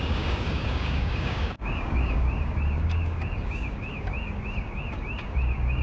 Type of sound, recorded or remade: remade